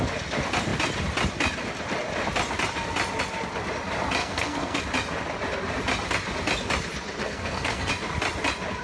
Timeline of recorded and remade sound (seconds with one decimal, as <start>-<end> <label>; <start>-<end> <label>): 0.0-4.2 recorded; 4.2-4.8 remade; 4.8-7.2 recorded; 7.2-7.9 remade; 7.9-8.8 recorded